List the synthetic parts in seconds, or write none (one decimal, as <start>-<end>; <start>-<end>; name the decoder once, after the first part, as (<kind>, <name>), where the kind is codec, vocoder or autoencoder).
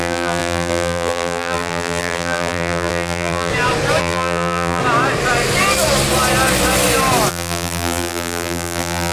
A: 0.0-3.5 (vocoder, BigVGAN v2); 4.0-4.8; 7.3-9.1